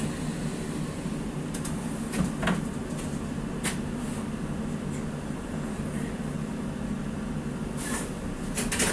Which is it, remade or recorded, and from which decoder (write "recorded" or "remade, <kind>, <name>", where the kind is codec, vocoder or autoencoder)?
recorded